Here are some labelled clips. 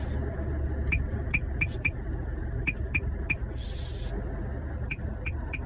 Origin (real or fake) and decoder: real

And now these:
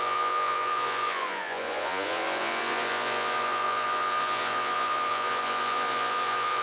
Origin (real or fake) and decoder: fake, vocoder, Vocos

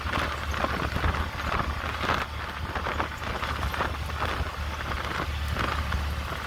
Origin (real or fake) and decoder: real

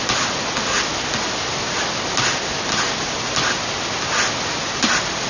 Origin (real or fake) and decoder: real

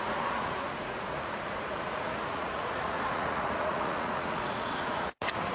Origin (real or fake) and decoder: fake, vocoder, Vocos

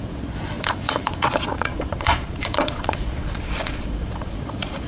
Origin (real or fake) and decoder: fake, vocoder, Vocos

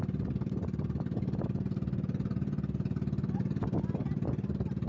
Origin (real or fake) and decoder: real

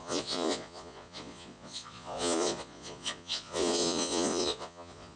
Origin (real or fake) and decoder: fake, vocoder, Vocos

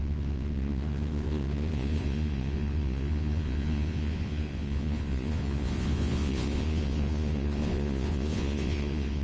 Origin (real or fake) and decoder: fake, vocoder, Vocos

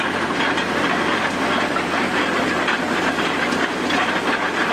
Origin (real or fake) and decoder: real